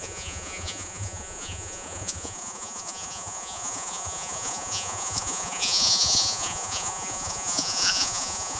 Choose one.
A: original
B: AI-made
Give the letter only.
B